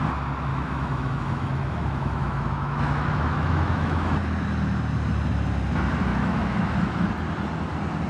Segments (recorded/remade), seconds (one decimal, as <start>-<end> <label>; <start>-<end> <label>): 0.0-0.5 recorded; 0.5-4.2 remade; 4.2-6.1 recorded; 6.1-7.1 remade; 7.1-8.1 recorded